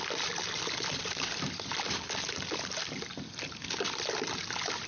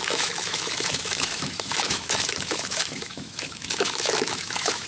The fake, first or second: second